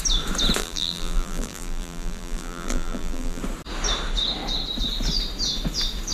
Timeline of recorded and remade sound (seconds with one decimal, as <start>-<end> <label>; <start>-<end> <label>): 0.0-0.6 recorded; 0.6-3.4 remade; 3.4-6.1 recorded